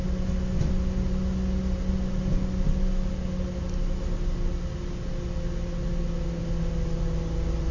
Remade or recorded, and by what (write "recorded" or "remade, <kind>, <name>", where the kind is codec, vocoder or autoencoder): recorded